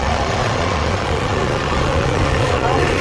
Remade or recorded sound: remade